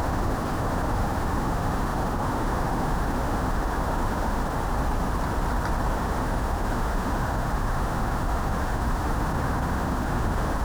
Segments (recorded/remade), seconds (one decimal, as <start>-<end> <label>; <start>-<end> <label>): 0.0-4.4 remade; 4.4-5.9 recorded; 5.9-10.6 remade